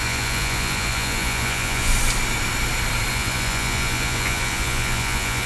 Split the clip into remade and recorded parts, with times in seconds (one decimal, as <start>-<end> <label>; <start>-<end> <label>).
0.0-1.9 remade; 1.9-3.1 recorded; 3.1-5.5 remade